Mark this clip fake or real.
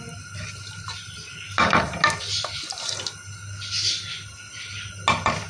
real